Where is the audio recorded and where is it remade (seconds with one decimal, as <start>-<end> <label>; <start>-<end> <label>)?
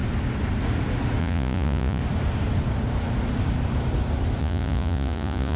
0.0-1.2 recorded; 1.2-2.0 remade; 2.0-4.4 recorded; 4.4-5.6 remade